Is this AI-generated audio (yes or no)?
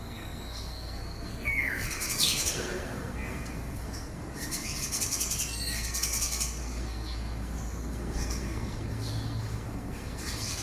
yes